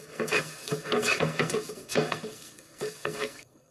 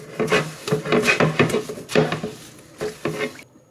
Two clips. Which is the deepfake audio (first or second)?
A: first